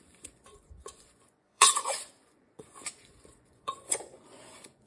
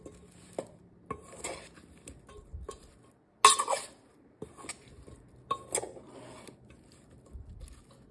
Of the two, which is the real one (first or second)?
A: second